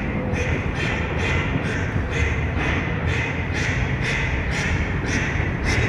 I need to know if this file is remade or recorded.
remade